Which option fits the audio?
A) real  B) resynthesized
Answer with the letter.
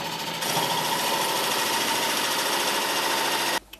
A